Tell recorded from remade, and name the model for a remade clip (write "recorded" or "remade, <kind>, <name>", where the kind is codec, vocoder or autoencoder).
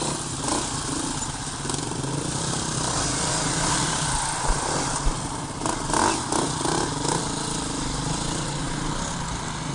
recorded